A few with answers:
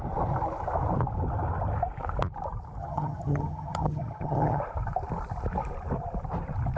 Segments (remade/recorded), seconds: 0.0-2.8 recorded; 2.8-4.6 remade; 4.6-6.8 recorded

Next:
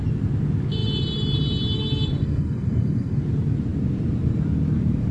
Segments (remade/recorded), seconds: 0.0-2.2 recorded; 2.2-3.2 remade; 3.2-5.1 recorded

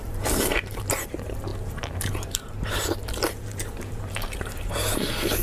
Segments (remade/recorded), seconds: 0.0-1.1 remade; 1.1-1.5 recorded; 1.5-4.7 remade; 4.7-5.4 recorded

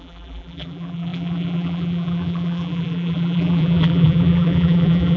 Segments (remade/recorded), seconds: 0.0-5.2 remade

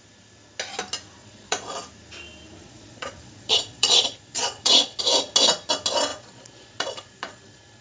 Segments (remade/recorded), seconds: 0.0-1.2 recorded; 1.2-1.8 remade; 1.8-2.6 recorded; 2.6-5.0 remade; 5.0-6.1 recorded; 6.1-7.8 remade

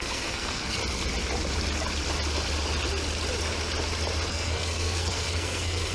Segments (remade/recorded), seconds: 0.0-0.8 remade; 0.8-4.3 recorded; 4.3-5.9 remade

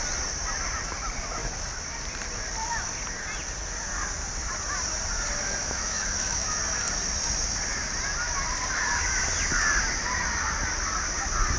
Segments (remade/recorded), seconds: 0.0-5.6 recorded; 5.6-6.6 remade; 6.6-11.6 recorded

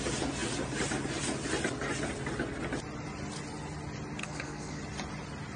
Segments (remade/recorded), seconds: 0.0-4.2 recorded; 4.2-4.8 remade; 4.8-5.6 recorded